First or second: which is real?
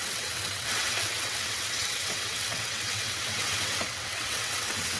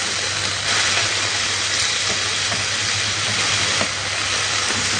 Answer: second